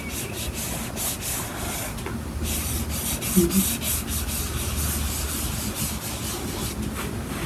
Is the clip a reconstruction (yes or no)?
no